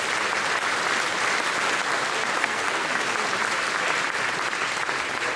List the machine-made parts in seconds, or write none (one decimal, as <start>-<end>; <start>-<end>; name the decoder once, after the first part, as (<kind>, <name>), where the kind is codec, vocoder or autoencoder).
2.4-3.0 (codec, SNAC)